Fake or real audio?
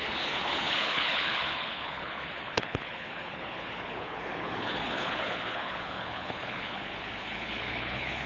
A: fake